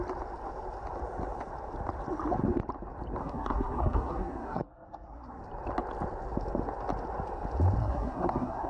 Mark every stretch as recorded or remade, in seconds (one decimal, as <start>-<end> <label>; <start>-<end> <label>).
0.0-3.2 recorded; 3.2-5.4 remade; 5.4-7.8 recorded; 7.8-8.7 remade